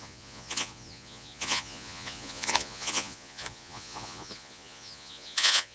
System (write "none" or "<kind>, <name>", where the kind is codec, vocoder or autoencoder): vocoder, Vocos